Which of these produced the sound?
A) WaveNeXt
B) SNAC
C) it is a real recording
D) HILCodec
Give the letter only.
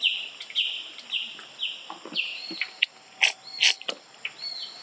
C